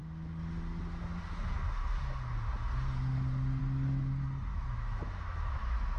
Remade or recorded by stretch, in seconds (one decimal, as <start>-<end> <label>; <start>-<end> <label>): 0.0-4.5 recorded; 4.5-5.6 remade; 5.6-6.0 recorded